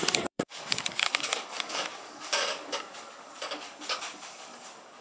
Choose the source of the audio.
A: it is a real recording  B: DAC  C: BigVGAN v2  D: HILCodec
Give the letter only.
B